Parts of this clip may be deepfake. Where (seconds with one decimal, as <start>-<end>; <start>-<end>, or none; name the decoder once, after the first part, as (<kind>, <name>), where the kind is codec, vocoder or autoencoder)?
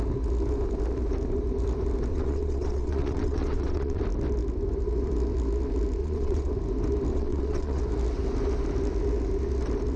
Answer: 2.1-4.0 (vocoder, WaveNeXt); 6.0-6.5; 7.1-7.8